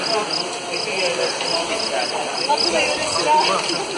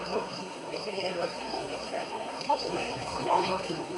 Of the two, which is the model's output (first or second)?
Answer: second